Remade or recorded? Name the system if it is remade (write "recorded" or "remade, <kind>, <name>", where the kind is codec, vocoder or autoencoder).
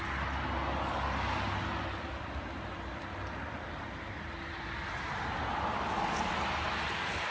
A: recorded